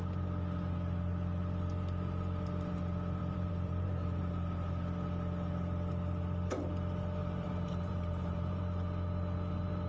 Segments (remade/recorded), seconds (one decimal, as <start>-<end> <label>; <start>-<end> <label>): 0.0-3.2 recorded; 3.2-4.2 remade; 4.2-7.2 recorded; 7.2-8.6 remade; 8.6-9.9 recorded